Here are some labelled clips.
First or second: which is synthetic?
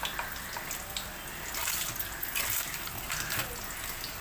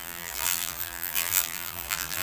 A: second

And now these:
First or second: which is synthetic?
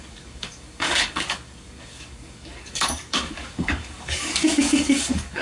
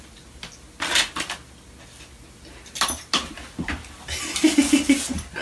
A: first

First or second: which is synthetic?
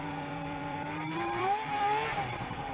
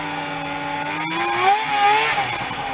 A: first